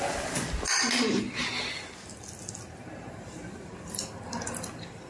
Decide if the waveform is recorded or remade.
recorded